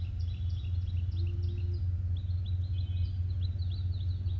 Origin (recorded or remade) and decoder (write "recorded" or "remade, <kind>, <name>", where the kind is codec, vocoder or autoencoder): recorded